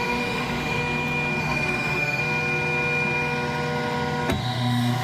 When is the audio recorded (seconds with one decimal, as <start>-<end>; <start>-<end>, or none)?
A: 0.8-1.4; 2.2-4.4